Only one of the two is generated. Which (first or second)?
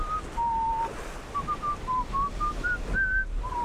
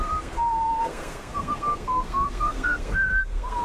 second